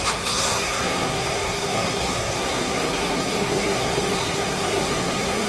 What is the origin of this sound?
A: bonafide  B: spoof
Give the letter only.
B